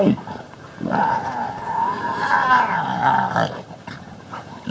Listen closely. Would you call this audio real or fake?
fake